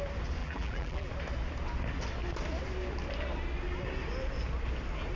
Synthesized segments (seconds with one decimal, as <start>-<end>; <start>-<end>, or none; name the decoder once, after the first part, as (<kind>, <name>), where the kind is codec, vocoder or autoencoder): 0.4-1.1 (vocoder, BigVGAN v2)